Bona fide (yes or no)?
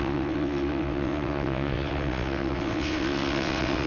no